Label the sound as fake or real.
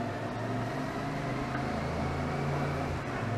real